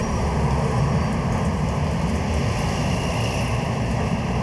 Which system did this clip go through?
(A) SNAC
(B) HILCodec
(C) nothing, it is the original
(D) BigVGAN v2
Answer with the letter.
C